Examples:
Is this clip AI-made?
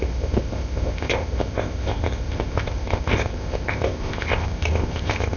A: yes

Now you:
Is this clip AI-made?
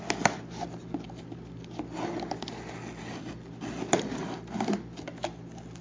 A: no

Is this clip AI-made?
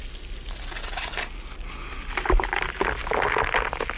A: no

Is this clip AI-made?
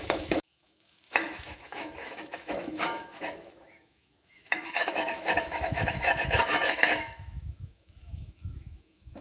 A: yes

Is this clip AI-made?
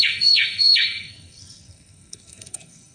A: yes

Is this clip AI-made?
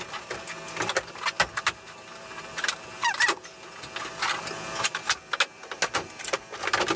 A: no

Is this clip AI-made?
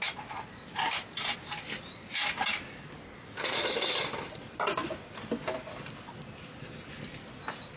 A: no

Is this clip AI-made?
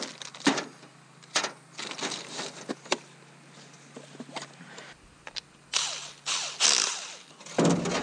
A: no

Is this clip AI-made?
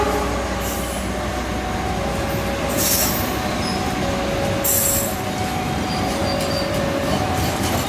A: no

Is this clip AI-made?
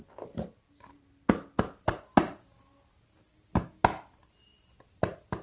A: no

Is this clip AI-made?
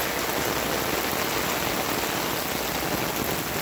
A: no